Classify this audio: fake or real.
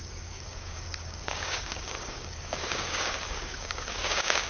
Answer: fake